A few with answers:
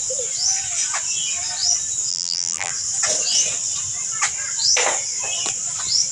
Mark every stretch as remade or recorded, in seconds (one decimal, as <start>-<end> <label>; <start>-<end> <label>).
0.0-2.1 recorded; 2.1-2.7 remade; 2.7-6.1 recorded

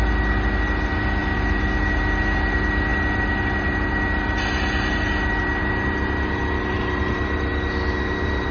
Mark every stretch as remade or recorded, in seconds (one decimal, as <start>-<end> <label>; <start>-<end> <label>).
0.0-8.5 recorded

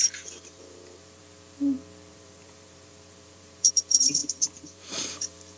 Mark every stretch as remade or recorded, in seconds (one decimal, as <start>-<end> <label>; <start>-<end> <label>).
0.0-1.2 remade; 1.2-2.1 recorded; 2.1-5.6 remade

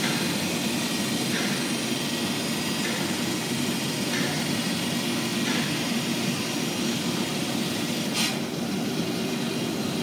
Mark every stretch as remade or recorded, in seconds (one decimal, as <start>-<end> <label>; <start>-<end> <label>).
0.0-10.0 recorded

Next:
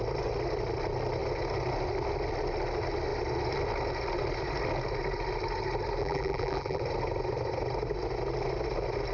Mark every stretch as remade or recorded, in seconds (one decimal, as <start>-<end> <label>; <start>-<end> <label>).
0.0-6.0 recorded; 6.0-6.8 remade; 6.8-9.1 recorded

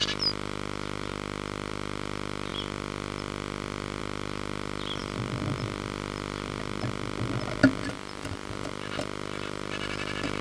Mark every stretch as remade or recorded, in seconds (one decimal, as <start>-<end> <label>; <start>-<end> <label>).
0.0-1.1 remade; 1.1-1.7 recorded; 1.7-2.5 remade; 2.5-4.0 recorded; 4.0-7.6 remade; 7.6-8.7 recorded; 8.7-10.4 remade

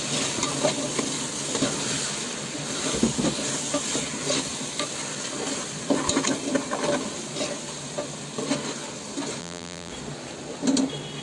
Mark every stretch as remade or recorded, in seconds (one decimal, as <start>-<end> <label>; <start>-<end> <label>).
0.0-9.4 recorded; 9.4-9.9 remade; 9.9-11.2 recorded